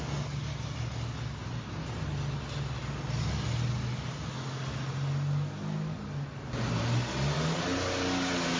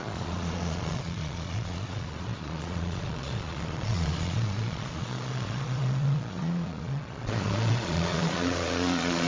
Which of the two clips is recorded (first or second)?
first